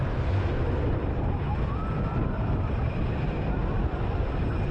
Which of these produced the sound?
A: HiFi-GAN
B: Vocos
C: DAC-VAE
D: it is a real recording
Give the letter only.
D